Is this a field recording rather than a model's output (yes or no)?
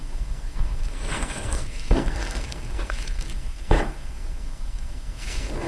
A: no